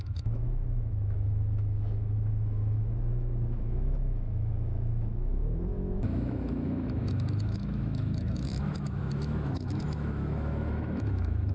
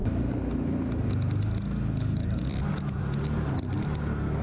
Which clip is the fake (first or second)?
first